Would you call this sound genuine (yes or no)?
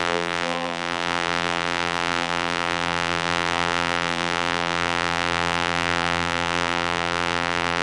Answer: no